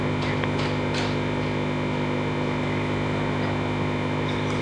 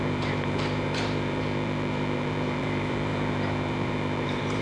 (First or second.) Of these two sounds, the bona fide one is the first